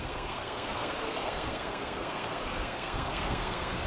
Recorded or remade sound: remade